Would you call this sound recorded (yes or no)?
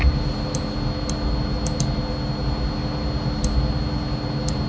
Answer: yes